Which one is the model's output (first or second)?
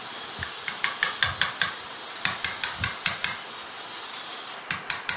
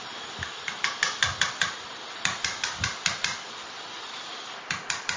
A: second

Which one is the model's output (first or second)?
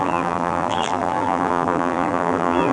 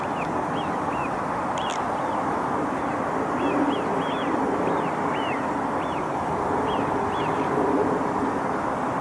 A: first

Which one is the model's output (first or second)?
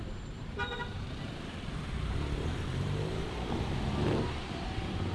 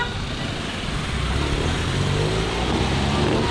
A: first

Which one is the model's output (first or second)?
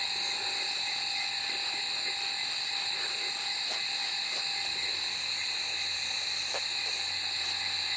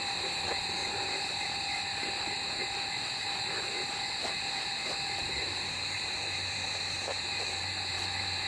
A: second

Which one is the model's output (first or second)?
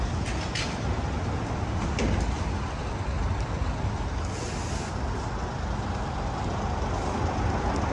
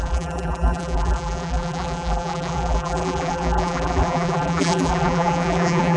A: second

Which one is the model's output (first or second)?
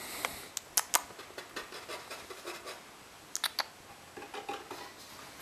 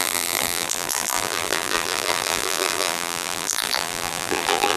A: second